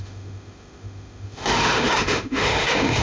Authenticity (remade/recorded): remade